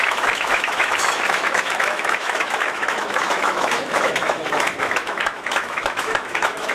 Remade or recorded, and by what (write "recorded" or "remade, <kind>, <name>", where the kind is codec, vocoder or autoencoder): remade, autoencoder, DAC-VAE